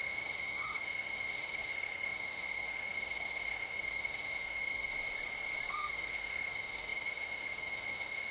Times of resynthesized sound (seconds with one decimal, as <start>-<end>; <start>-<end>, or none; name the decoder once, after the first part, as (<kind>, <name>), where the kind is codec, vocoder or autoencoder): 0.0-4.9 (autoencoder, DAC-VAE); 5.7-8.3